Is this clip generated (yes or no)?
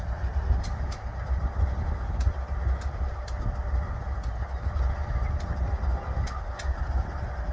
no